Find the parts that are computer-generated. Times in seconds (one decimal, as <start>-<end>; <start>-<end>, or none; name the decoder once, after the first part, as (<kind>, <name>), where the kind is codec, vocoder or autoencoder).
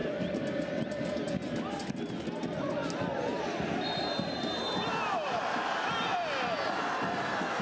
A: none